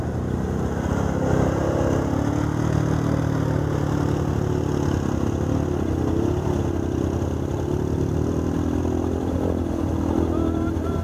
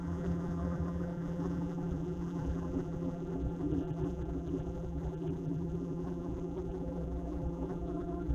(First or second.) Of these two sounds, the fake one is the second